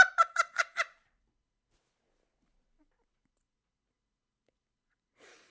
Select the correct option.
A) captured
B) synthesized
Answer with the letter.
B